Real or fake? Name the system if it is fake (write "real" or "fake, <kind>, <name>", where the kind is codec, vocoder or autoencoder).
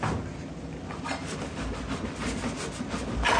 real